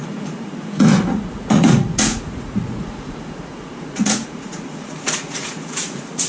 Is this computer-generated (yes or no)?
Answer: yes